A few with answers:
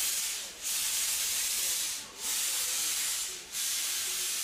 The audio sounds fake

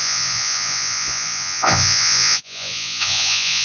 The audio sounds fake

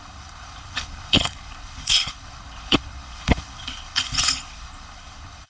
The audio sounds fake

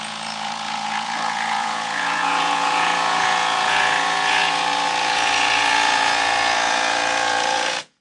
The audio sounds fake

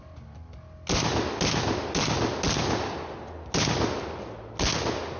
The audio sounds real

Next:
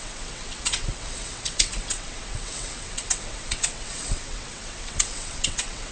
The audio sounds fake